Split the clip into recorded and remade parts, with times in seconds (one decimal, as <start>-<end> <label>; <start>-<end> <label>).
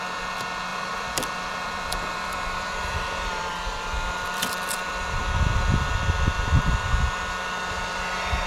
0.0-0.7 recorded; 0.7-5.2 remade; 5.2-8.5 recorded